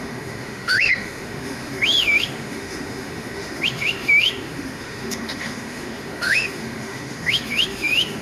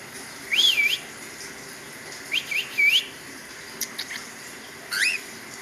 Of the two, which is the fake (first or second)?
first